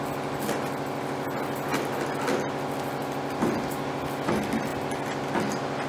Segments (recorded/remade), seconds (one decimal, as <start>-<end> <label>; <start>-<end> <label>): 0.0-5.9 recorded